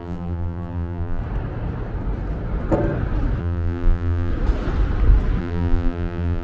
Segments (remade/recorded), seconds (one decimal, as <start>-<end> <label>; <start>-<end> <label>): 0.0-1.2 remade; 1.2-3.4 recorded; 3.4-4.3 remade; 4.3-5.4 recorded; 5.4-6.4 remade